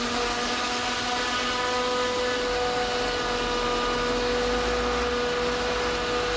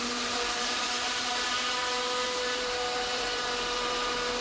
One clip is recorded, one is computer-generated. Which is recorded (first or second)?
first